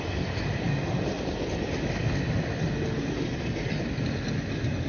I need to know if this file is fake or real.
real